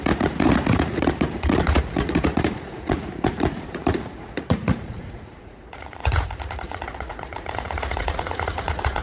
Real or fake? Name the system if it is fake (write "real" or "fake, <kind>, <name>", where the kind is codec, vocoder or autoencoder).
fake, vocoder, Vocos